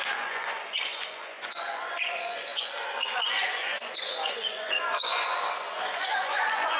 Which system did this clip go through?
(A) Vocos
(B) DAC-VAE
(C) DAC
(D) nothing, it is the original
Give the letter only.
A